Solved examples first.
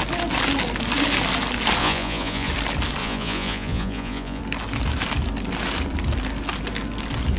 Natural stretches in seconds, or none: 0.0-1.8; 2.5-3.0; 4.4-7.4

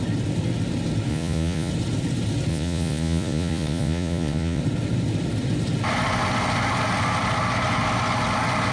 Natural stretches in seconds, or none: 0.0-1.1; 1.7-2.5; 4.6-8.7

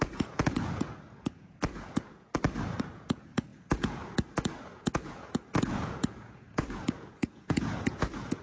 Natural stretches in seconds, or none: 2.3-2.9

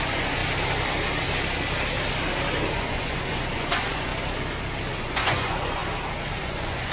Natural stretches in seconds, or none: 0.4-2.7; 4.1-5.0; 5.8-6.4

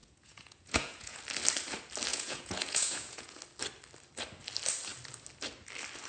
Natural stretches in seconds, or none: 1.2-2.1; 3.4-6.1